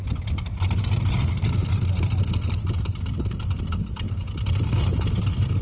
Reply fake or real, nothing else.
real